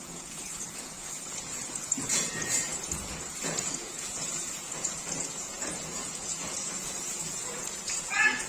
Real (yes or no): no